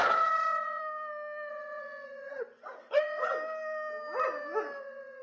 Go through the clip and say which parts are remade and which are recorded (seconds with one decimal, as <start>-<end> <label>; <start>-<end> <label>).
0.0-0.8 remade; 0.8-1.5 recorded; 1.5-3.3 remade; 3.3-4.8 recorded; 4.8-5.2 remade

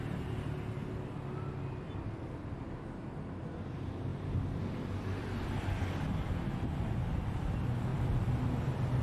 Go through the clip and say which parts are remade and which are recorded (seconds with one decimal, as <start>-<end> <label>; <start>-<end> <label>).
0.0-7.9 recorded; 7.9-9.0 remade

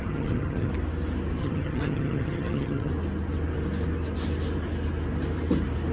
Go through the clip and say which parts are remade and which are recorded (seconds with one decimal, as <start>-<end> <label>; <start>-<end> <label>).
0.0-0.7 remade; 0.7-1.4 recorded; 1.4-2.9 remade; 2.9-5.9 recorded

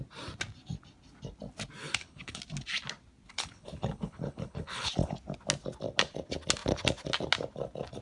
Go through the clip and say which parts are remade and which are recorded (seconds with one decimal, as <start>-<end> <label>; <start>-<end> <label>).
0.0-1.8 recorded; 1.8-2.4 remade; 2.4-3.3 recorded; 3.3-4.9 remade; 4.9-8.0 recorded

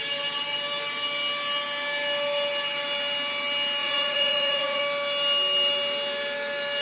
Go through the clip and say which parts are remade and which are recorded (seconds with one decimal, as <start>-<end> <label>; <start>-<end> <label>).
0.0-3.8 recorded; 3.8-4.8 remade; 4.8-6.8 recorded